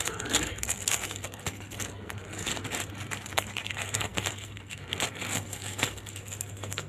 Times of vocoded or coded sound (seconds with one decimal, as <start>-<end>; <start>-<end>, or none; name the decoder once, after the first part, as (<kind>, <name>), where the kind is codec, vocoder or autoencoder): 0.0-2.5 (codec, SNAC); 3.3-6.9